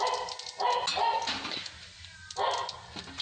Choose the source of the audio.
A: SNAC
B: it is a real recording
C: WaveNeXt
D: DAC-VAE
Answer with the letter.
B